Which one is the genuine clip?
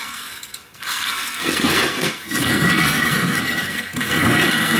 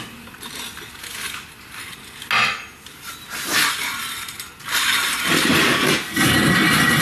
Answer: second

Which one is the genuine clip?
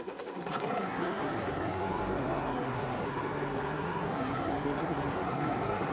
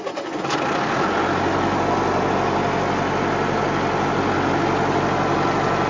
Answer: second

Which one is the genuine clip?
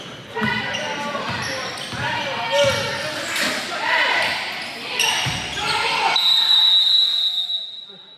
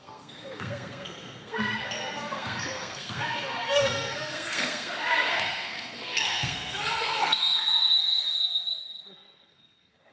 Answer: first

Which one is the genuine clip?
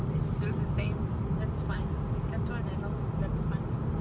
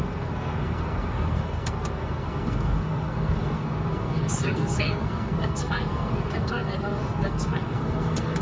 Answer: first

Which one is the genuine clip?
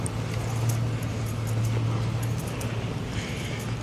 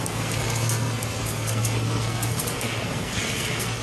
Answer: first